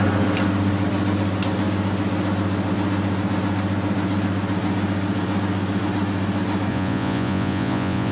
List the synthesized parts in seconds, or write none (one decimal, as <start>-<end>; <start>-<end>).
6.7-8.1